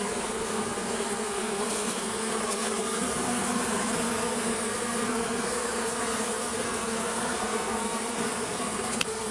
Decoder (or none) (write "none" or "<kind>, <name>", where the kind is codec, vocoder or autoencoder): codec, SNAC